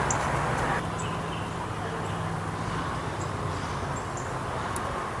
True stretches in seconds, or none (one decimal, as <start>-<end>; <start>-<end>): 0.0-5.2